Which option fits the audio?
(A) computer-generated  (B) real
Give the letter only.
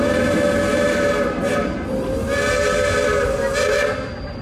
B